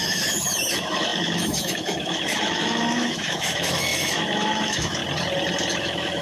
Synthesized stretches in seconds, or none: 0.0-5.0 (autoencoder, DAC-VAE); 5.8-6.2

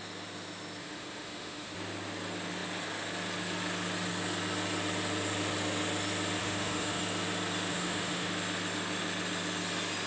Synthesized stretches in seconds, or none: 0.8-1.7 (autoencoder, DAC-VAE); 6.4-7.0; 7.7-8.3

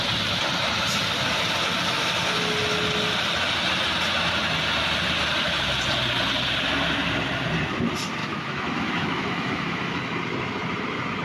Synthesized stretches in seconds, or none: 8.2-10.0 (autoencoder, DAC-VAE)

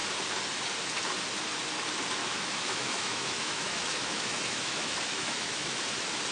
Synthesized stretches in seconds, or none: 2.2-5.8 (autoencoder, DAC-VAE)

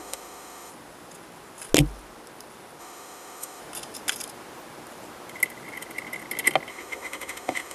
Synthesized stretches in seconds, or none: 0.0-0.7 (autoencoder, DAC-VAE); 2.8-3.6; 6.7-7.7

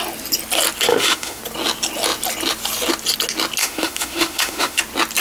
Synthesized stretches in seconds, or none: 0.9-1.4 (autoencoder, DAC-VAE); 3.6-4.8

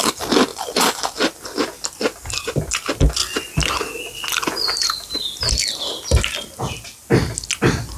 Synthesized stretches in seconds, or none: none

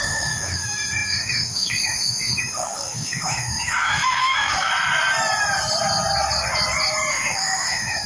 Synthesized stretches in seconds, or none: 0.0-4.7 (autoencoder, DAC-VAE); 7.1-8.1